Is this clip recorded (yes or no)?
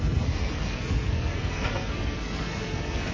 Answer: no